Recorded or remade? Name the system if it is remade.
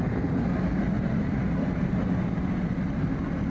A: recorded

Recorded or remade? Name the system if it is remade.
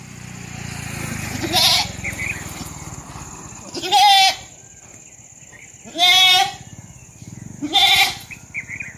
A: recorded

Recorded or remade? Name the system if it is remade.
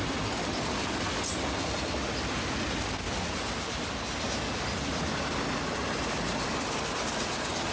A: recorded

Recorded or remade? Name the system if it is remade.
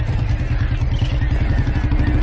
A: recorded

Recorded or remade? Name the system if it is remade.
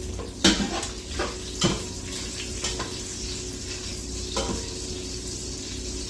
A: recorded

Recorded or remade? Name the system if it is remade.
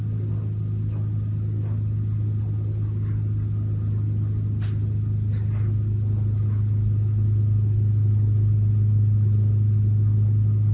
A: recorded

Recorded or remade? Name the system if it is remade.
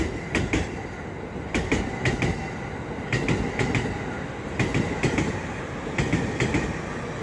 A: recorded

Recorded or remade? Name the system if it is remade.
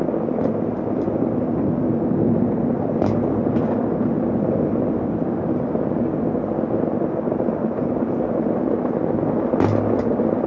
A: recorded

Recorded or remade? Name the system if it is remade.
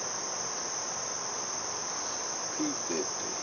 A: recorded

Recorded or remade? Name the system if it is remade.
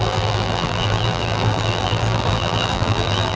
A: remade, vocoder, BigVGAN v2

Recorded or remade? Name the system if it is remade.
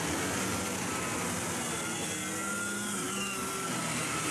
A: recorded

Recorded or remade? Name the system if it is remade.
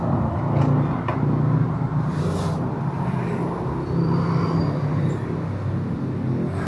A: recorded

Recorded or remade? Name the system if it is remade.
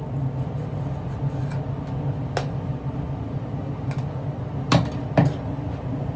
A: recorded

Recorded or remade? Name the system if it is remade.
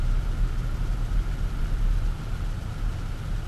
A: recorded